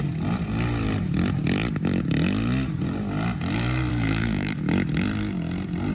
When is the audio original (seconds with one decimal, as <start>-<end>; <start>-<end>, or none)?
0.0-3.9; 4.6-5.9